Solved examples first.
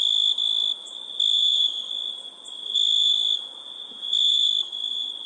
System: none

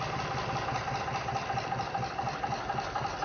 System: none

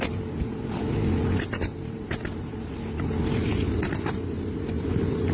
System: none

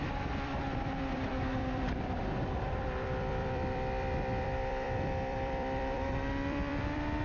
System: vocoder, BigVGAN v2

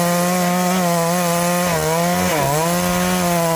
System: none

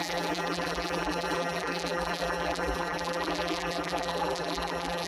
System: vocoder, BigVGAN v2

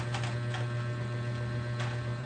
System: none